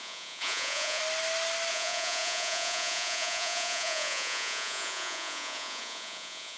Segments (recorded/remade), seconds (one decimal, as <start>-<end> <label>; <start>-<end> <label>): 0.0-1.0 remade; 1.0-1.7 recorded; 1.7-6.6 remade